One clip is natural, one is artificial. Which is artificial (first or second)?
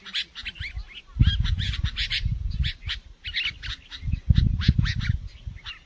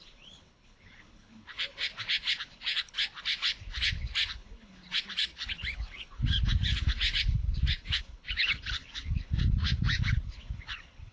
second